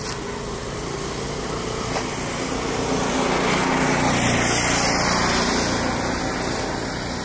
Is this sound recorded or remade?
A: recorded